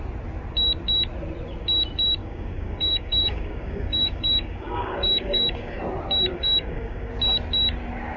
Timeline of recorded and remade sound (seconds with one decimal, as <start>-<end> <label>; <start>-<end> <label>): 0.0-2.2 recorded; 2.2-5.8 remade; 5.8-6.3 recorded; 6.3-7.1 remade; 7.1-8.2 recorded